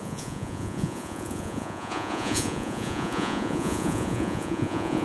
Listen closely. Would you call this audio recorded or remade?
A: remade